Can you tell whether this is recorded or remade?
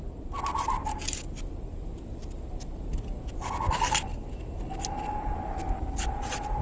recorded